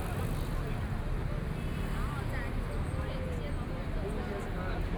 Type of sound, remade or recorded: recorded